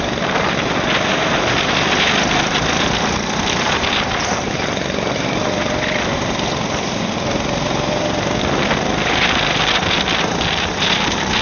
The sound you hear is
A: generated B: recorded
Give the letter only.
B